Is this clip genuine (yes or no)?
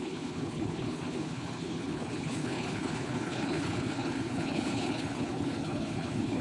no